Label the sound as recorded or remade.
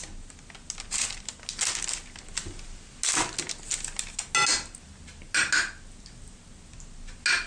recorded